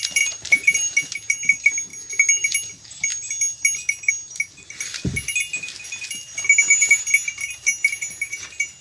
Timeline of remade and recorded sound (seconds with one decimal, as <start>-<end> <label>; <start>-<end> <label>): 0.0-8.8 recorded